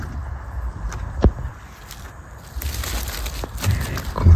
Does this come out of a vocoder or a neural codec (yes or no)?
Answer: no